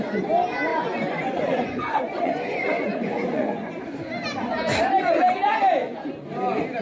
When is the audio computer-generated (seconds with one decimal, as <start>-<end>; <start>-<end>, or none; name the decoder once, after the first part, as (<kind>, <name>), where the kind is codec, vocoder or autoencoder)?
0.7-3.7 (vocoder, Vocos)